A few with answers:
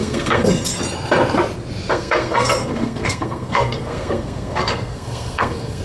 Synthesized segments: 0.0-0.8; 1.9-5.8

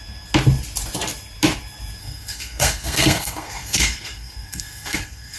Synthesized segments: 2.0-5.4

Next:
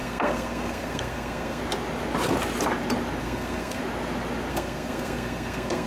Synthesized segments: 0.0-1.6; 3.2-3.8; 4.5-5.9

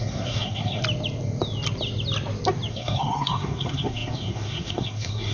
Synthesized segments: 0.0-0.8; 2.7-5.3

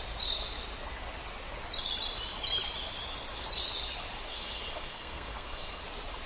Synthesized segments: 4.3-5.8